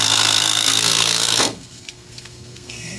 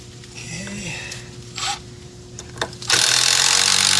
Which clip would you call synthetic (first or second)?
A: first